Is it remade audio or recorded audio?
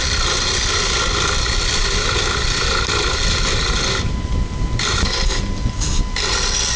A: recorded